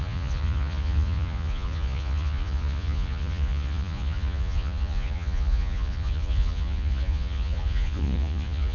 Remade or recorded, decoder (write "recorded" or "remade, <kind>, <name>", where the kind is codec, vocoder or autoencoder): remade, vocoder, Vocos